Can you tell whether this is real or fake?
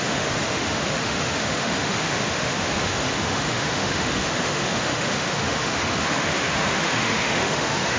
fake